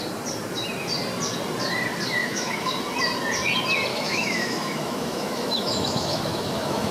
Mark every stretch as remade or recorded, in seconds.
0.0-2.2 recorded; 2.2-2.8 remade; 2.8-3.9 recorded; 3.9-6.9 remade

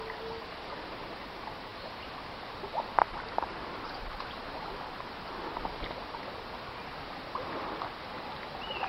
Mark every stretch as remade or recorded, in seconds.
0.0-8.9 recorded

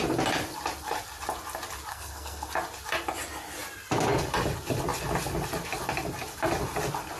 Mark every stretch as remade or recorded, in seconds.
0.0-1.9 recorded; 1.9-2.5 remade; 2.5-7.2 recorded

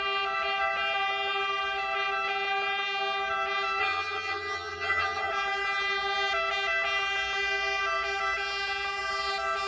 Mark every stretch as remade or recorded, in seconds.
0.0-3.8 recorded; 3.8-5.3 remade; 5.3-9.7 recorded

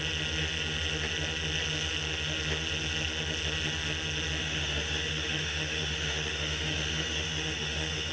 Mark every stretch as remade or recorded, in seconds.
0.0-4.4 recorded; 4.4-8.1 remade

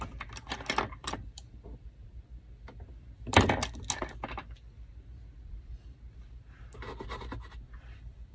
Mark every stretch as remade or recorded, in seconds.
0.0-1.0 recorded; 1.0-2.4 remade; 2.4-8.3 recorded

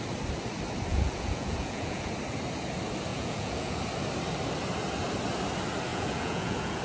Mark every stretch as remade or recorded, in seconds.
0.0-0.9 recorded; 0.9-2.1 remade; 2.1-3.1 recorded; 3.1-3.8 remade; 3.8-5.9 recorded; 5.9-6.8 remade

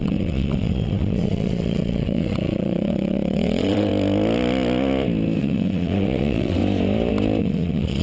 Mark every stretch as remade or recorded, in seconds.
0.0-3.9 remade; 3.9-5.4 recorded; 5.4-6.6 remade; 6.6-7.4 recorded; 7.4-8.0 remade